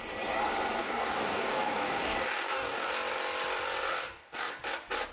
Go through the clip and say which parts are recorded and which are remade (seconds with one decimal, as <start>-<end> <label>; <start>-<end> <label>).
0.0-0.8 recorded; 0.8-2.9 remade; 2.9-3.9 recorded; 3.9-4.5 remade; 4.5-5.1 recorded